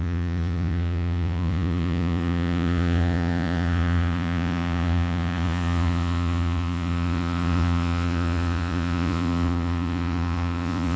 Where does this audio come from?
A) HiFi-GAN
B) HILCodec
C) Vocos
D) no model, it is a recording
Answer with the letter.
C